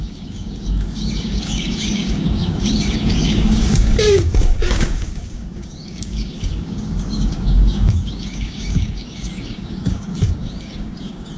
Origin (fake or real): fake